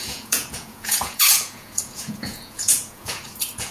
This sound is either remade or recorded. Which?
remade